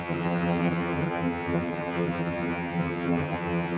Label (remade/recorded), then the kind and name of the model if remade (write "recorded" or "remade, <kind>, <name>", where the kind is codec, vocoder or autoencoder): remade, vocoder, HiFi-GAN